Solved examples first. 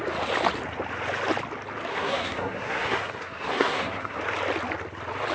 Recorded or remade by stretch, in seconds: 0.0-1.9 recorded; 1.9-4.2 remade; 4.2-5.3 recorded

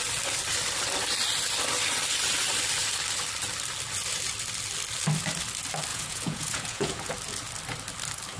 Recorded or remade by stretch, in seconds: 0.0-5.9 recorded; 5.9-7.1 remade; 7.1-8.4 recorded

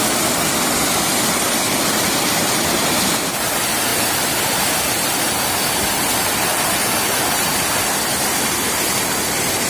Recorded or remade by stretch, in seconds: 0.0-9.7 recorded